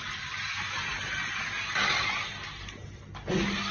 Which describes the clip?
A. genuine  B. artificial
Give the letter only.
A